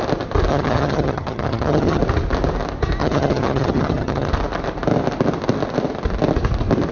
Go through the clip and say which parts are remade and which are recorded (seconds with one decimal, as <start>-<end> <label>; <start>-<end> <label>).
0.0-0.5 recorded; 0.5-2.0 remade; 2.0-3.0 recorded; 3.0-4.3 remade; 4.3-6.9 recorded